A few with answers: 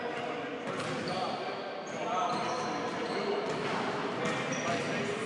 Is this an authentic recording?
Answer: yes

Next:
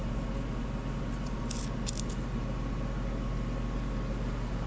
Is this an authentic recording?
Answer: yes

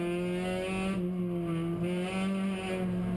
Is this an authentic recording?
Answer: yes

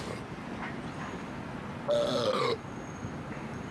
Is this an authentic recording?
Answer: yes